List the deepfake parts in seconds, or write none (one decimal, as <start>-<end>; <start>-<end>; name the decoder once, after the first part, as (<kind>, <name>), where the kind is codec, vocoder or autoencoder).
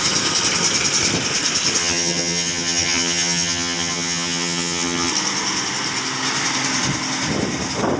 1.8-5.1 (vocoder, HiFi-GAN)